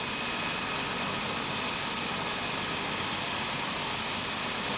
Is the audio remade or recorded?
recorded